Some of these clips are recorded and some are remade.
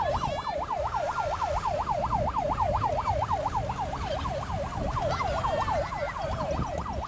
recorded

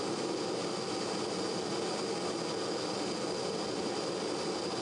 recorded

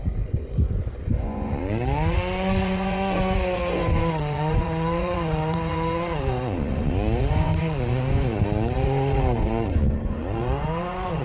remade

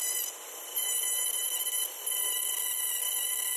recorded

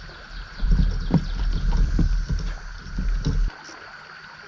recorded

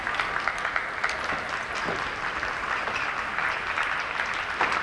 recorded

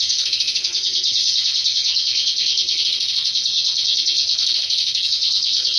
remade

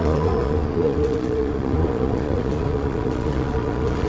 remade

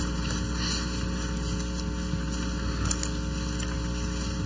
recorded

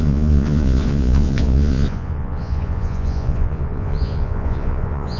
remade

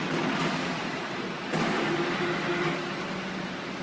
recorded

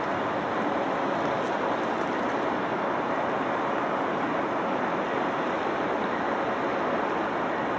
recorded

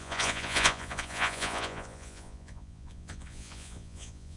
remade